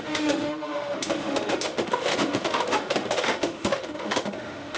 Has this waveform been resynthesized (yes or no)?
yes